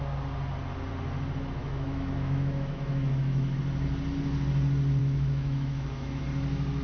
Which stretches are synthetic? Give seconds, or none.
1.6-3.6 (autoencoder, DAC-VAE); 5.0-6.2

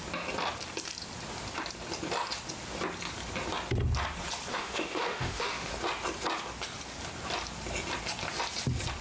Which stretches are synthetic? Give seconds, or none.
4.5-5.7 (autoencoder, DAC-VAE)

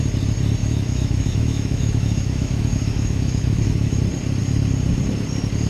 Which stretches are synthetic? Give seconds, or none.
0.6-4.0 (autoencoder, DAC-VAE)

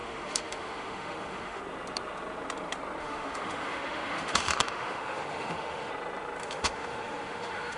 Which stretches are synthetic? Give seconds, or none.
0.0-1.6 (autoencoder, DAC-VAE); 3.0-5.9; 6.4-7.8

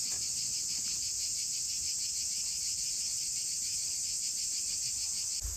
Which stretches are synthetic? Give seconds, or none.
none